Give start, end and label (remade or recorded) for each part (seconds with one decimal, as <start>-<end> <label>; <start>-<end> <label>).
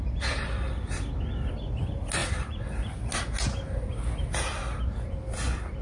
0.0-5.8 recorded